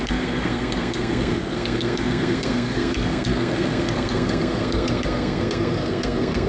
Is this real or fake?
fake